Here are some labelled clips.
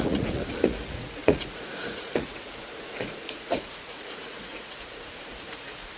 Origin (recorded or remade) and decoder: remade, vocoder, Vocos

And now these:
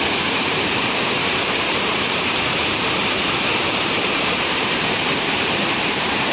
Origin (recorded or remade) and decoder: remade, vocoder, BigVGAN v2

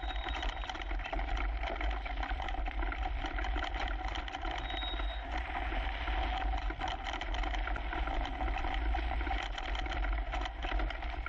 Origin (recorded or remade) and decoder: recorded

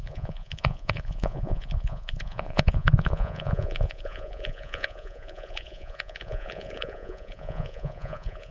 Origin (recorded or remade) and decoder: remade, vocoder, Vocos